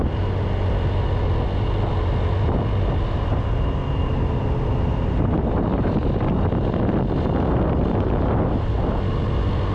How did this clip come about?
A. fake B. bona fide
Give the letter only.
B